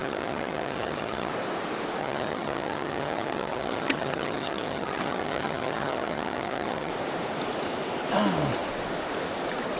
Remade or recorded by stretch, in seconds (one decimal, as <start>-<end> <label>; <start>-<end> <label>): 0.0-1.3 remade; 1.3-2.0 recorded; 2.0-6.9 remade; 6.9-9.8 recorded